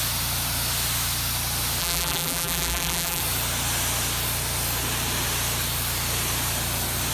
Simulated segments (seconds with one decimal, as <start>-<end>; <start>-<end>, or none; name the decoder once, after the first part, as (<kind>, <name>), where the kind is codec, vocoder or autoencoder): 1.8-3.2 (vocoder, BigVGAN v2)